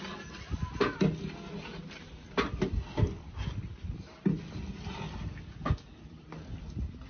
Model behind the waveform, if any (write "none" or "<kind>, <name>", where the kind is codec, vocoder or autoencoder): none